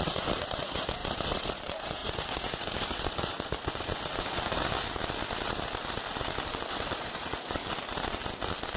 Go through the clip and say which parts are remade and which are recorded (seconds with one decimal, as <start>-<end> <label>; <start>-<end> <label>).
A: 0.0-4.6 remade; 4.6-6.5 recorded; 6.5-7.6 remade; 7.6-8.8 recorded